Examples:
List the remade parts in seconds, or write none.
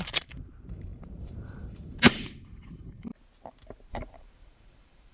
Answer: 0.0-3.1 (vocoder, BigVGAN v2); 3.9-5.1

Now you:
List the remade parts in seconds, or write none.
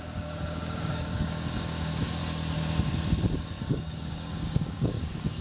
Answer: 0.0-2.2 (codec, DAC); 3.6-5.4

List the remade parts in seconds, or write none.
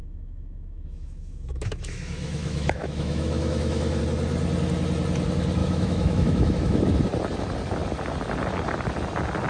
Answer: 0.0-4.0 (autoencoder, DAC-VAE); 5.6-6.8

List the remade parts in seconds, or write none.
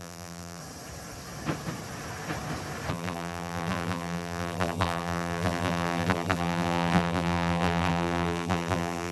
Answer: 0.0-0.6 (vocoder, BigVGAN v2); 2.9-9.1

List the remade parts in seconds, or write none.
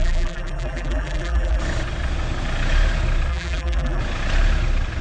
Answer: 0.0-1.6 (vocoder, BigVGAN v2); 3.3-4.0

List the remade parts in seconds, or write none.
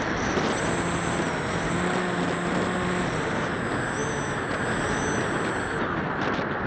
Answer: none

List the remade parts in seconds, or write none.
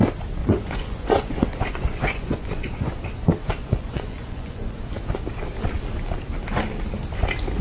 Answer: 0.4-3.0 (vocoder, Vocos); 3.6-4.8